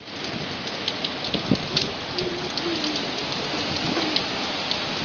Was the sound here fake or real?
real